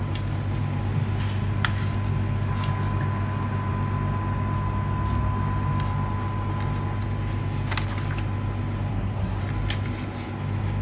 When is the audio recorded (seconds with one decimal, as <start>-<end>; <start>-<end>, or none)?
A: 0.0-8.9; 9.4-10.8